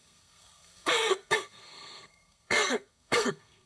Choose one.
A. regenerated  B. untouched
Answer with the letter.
A